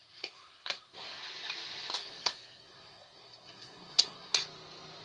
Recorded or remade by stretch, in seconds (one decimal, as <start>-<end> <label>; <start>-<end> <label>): 0.0-1.2 remade; 1.2-2.0 recorded; 2.0-4.4 remade; 4.4-5.0 recorded